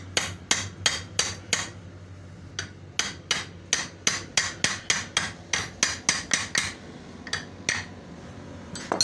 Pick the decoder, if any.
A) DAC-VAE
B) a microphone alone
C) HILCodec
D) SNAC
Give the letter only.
B